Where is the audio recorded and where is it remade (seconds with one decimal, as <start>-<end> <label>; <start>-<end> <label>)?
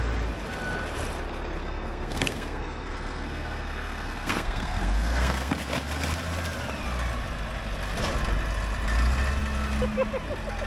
0.0-1.6 recorded; 1.6-5.5 remade; 5.5-10.7 recorded